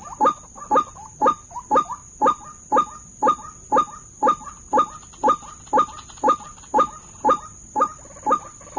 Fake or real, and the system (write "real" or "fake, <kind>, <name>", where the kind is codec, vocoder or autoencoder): real